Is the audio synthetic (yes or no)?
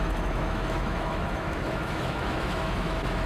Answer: yes